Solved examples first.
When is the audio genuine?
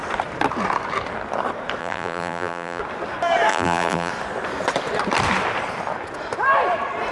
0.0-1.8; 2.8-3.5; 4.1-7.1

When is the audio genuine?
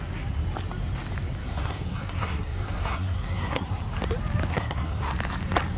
0.0-1.4; 3.8-4.5; 5.1-5.8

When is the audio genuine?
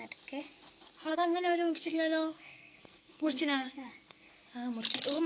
0.0-1.1; 4.3-5.3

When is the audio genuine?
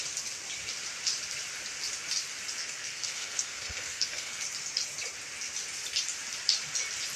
0.0-2.6; 4.4-7.2